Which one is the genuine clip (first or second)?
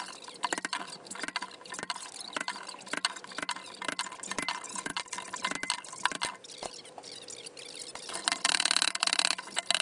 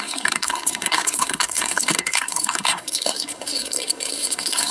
first